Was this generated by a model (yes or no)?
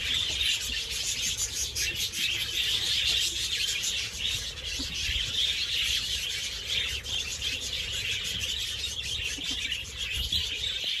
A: no